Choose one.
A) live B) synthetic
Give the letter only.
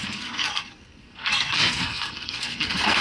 B